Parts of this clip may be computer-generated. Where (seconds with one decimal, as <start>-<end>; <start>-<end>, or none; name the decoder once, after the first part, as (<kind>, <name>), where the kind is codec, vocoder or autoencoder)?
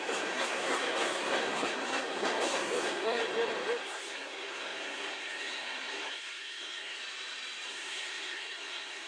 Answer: 0.0-3.2 (codec, SNAC); 3.8-7.0; 7.7-9.1